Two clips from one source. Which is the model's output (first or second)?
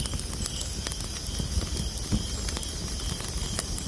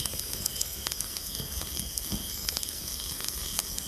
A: second